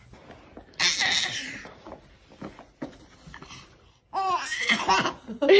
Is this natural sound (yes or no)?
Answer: yes